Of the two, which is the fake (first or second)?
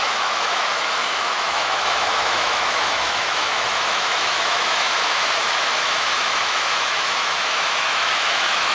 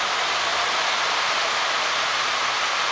first